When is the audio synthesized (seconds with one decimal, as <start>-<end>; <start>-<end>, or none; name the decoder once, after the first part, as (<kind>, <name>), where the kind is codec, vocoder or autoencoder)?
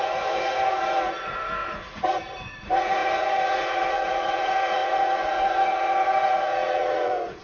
0.0-7.4 (vocoder, Vocos)